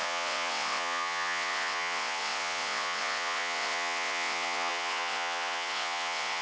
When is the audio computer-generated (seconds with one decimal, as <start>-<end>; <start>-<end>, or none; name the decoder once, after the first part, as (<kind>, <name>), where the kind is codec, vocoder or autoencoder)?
0.0-6.4 (vocoder, WaveNeXt)